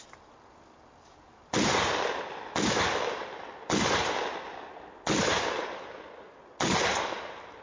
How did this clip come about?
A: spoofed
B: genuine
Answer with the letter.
B